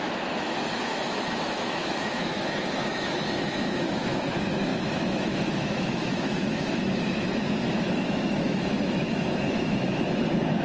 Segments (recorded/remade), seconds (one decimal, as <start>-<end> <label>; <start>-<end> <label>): 0.0-10.6 remade